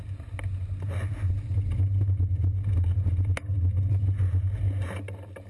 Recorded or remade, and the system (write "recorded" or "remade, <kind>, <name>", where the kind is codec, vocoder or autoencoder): recorded